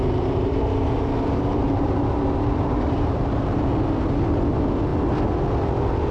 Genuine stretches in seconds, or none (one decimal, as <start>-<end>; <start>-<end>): 3.7-6.1